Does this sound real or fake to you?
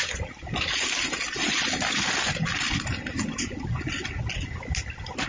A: real